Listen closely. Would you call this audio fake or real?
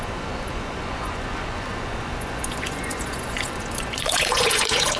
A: fake